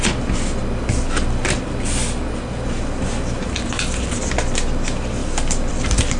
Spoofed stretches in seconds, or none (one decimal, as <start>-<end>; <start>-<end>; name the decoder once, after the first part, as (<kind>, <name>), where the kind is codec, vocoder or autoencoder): none

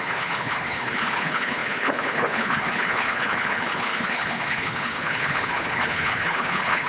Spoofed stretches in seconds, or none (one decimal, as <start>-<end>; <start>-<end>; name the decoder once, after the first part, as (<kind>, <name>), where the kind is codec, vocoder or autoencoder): 0.0-6.9 (codec, HILCodec)

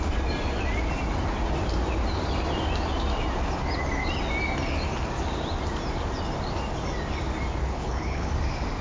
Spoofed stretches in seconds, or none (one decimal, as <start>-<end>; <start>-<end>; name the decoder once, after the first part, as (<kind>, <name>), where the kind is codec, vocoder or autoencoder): 7.6-8.3 (codec, HILCodec)

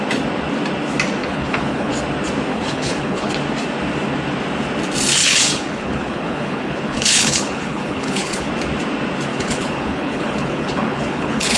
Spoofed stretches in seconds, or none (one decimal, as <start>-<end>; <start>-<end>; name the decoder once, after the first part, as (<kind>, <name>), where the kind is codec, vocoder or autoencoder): 1.2-1.9 (codec, HILCodec); 2.5-3.3; 5.2-8.5; 9.3-11.6

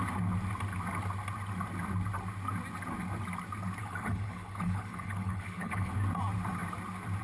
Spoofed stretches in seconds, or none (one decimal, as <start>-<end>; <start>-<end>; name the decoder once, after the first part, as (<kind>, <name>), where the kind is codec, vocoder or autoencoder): 3.8-5.9 (codec, HILCodec)

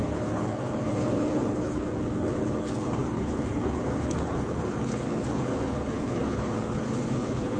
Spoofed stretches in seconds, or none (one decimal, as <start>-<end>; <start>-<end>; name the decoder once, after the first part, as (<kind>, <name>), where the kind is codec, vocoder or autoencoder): 0.0-7.6 (codec, HILCodec)